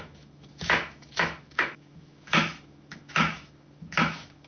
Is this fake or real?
fake